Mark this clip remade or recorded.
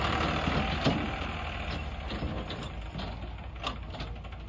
recorded